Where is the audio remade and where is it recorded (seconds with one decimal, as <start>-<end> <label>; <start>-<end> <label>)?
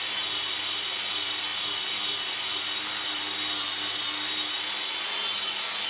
0.0-5.9 recorded